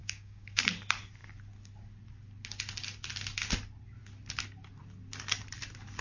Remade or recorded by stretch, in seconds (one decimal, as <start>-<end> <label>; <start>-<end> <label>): 0.0-0.6 remade; 0.6-6.0 recorded